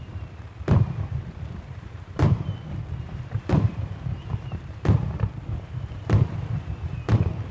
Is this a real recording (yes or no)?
no